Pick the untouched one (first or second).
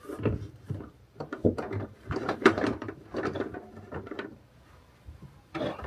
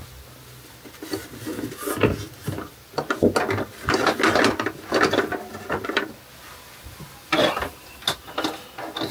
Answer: second